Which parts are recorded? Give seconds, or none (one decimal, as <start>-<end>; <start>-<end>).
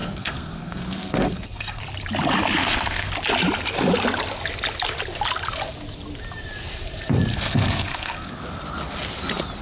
1.8-2.6; 3.1-7.3; 8.3-9.6